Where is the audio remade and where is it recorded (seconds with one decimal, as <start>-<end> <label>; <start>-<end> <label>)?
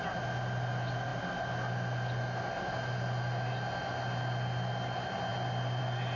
0.0-6.2 recorded